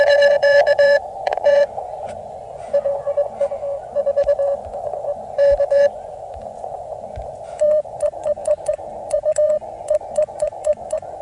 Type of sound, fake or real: fake